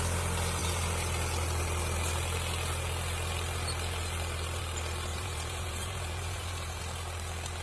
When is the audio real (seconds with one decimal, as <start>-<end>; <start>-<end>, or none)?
0.0-5.1; 6.8-7.6